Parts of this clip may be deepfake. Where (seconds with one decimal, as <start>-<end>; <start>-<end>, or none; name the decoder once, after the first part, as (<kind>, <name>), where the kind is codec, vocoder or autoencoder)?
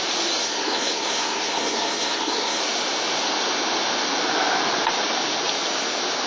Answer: 0.4-2.6 (codec, SNAC)